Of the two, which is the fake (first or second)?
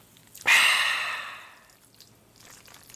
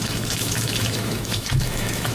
second